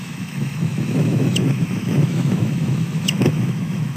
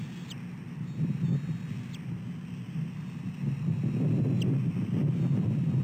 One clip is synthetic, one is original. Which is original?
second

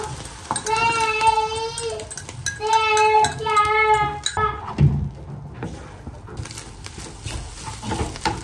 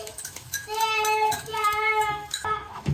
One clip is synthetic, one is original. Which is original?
first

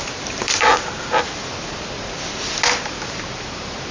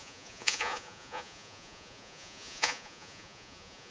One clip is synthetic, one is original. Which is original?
first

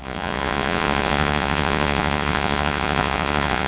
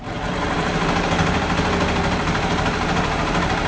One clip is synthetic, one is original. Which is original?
second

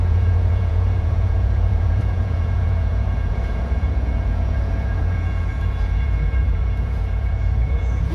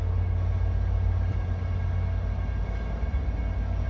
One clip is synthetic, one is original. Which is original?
second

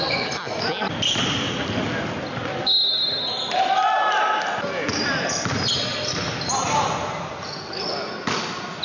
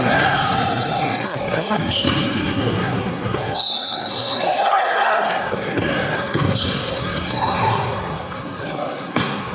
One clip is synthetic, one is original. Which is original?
first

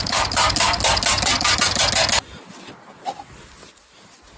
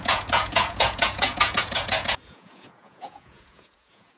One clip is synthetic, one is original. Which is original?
first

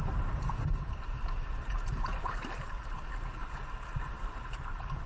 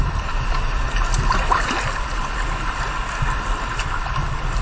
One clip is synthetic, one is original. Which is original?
second